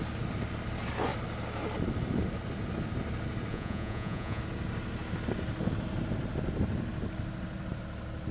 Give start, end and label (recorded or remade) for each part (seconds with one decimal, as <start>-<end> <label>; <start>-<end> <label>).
0.0-3.5 recorded; 3.5-4.4 remade; 4.4-8.3 recorded